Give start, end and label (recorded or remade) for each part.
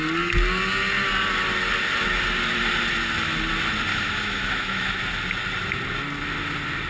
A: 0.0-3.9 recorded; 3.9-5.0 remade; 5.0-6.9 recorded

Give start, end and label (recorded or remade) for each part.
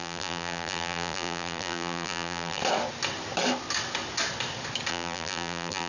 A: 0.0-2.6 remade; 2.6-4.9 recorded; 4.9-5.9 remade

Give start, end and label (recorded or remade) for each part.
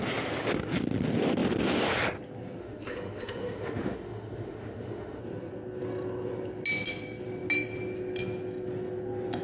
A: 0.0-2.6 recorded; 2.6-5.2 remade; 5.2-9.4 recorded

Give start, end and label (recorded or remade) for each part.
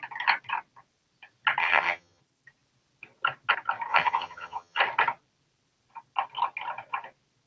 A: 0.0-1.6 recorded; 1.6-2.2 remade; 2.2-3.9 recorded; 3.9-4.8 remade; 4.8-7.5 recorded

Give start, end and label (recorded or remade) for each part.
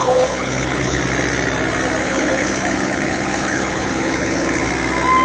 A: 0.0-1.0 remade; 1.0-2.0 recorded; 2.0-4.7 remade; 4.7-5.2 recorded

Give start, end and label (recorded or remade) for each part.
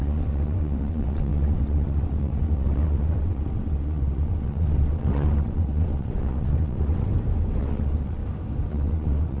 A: 0.0-7.1 remade; 7.1-7.6 recorded; 7.6-8.2 remade; 8.2-8.7 recorded; 8.7-9.4 remade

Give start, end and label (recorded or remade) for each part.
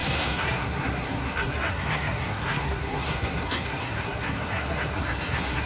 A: 0.0-5.7 remade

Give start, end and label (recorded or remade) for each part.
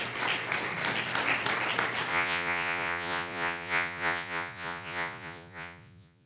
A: 0.0-2.1 recorded; 2.1-6.3 remade